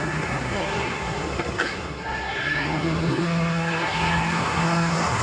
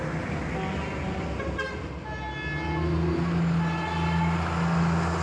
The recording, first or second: second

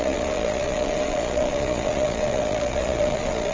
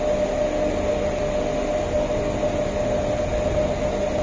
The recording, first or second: second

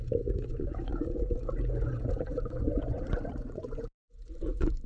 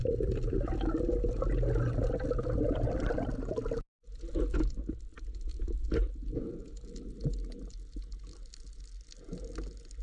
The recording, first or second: second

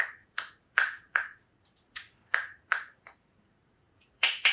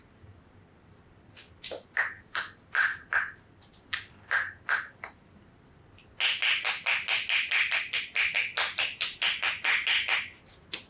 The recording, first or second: second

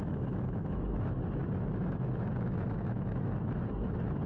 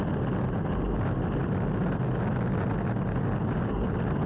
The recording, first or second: second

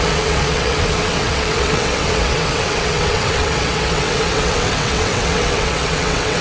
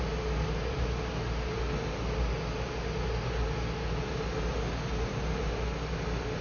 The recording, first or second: second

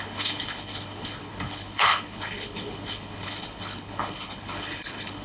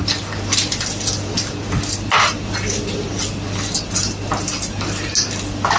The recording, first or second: second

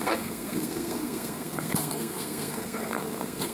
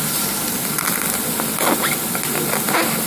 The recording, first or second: second